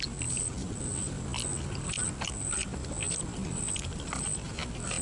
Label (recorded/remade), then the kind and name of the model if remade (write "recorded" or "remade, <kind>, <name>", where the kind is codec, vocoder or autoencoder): recorded